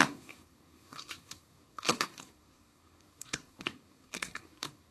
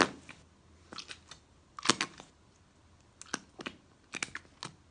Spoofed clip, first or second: first